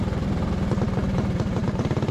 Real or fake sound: fake